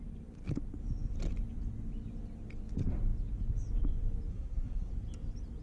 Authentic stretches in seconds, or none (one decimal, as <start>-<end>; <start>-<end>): 0.0-4.3; 4.9-5.6